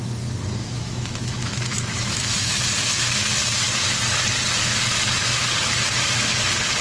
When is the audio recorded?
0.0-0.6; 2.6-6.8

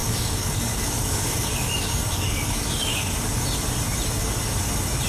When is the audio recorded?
3.1-5.1

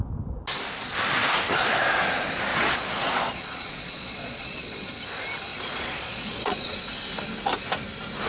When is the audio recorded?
0.0-2.5; 5.0-5.5; 6.9-8.3

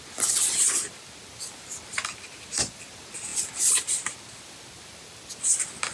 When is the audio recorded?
0.0-5.9

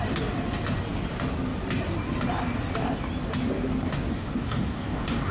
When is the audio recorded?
0.0-4.1

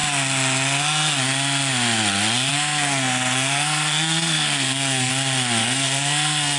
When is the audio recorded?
0.0-2.5; 5.1-5.6

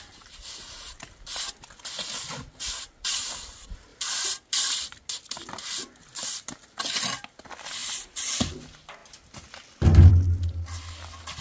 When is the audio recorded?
0.0-3.9; 5.0-7.8; 8.5-11.4

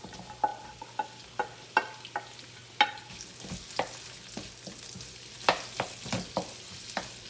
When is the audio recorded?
0.0-7.3